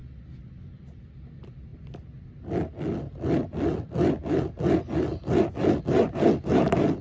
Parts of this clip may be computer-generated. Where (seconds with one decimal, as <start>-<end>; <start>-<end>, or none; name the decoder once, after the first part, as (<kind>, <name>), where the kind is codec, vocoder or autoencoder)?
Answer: none